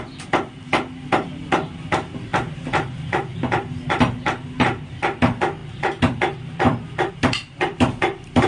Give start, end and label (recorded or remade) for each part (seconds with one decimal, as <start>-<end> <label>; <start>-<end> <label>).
0.0-2.3 remade; 2.3-4.0 recorded; 4.0-8.5 remade